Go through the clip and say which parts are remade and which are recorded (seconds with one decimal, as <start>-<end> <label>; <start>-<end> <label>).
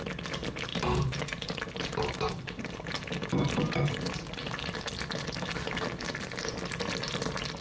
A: 0.0-7.6 recorded